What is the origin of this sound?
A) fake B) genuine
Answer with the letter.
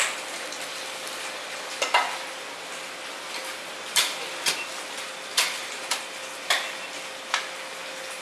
B